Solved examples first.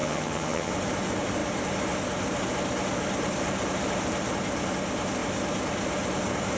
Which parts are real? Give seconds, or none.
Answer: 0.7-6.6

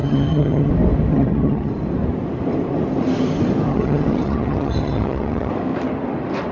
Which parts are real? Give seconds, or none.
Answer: 0.7-1.1; 1.7-3.7; 5.5-6.5

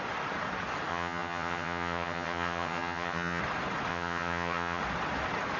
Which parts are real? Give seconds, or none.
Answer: 0.0-0.9; 3.4-3.9; 4.8-5.6